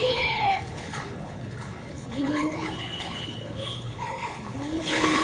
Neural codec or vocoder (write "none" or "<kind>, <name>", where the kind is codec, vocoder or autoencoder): codec, HILCodec